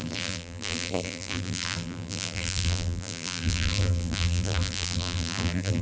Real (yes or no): no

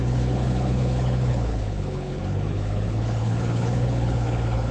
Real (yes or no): no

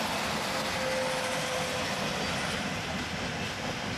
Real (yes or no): yes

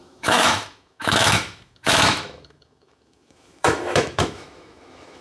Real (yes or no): no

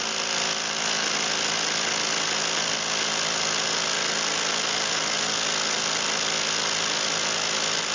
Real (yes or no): yes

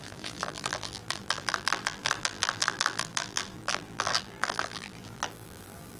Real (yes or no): no